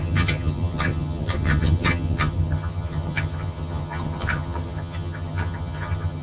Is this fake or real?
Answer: fake